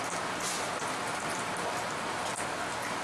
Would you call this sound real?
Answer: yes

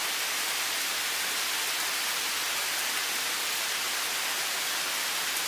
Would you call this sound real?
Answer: yes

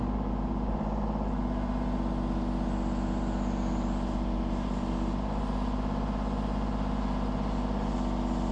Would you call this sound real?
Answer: yes